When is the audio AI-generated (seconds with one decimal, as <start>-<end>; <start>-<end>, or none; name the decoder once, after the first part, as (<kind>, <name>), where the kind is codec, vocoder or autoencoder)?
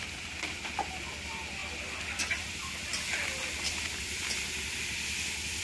none